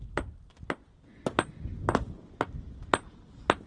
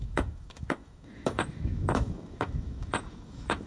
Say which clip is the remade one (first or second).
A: second